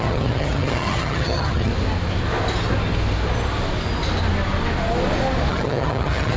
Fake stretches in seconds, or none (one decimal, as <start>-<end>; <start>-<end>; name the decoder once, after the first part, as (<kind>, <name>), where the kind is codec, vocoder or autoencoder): 0.0-1.7 (vocoder, HiFi-GAN); 5.5-6.4